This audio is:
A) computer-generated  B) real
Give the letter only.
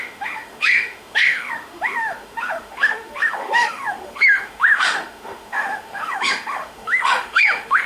A